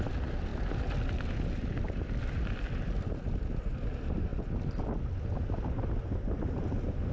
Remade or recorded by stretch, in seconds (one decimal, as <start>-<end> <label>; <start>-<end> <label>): 0.0-7.1 recorded